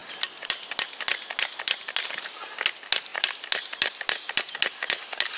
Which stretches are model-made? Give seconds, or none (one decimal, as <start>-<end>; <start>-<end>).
none